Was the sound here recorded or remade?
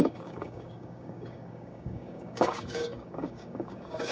remade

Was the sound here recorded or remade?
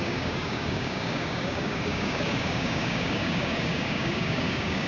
remade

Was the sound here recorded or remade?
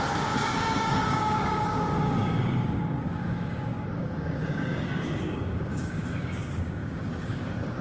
remade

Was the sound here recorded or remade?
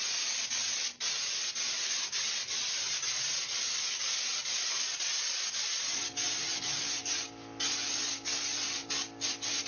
recorded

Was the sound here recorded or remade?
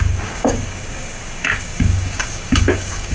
remade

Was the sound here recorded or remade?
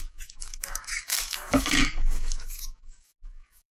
remade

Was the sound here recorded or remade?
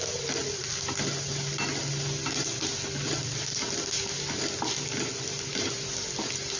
recorded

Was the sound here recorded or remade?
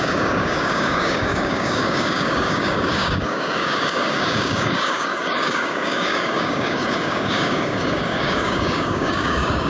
remade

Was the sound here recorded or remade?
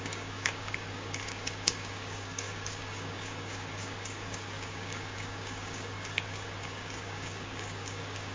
remade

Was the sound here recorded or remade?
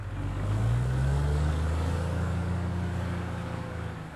remade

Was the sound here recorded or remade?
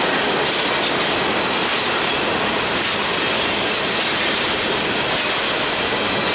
recorded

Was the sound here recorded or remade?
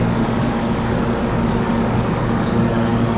remade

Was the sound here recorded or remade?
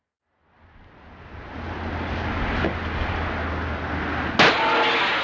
recorded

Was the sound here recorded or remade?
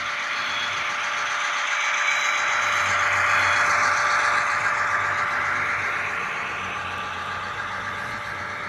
recorded